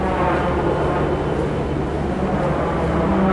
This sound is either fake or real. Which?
real